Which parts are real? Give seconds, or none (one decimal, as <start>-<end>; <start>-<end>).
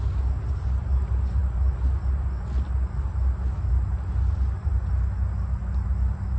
0.0-6.4